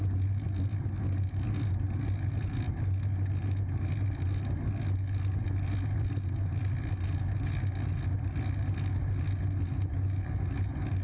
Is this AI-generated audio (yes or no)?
no